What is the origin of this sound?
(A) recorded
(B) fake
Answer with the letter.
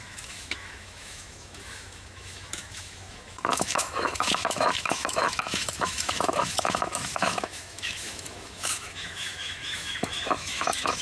B